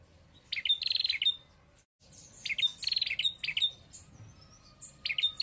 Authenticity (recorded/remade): recorded